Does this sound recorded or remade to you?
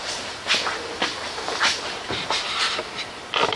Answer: recorded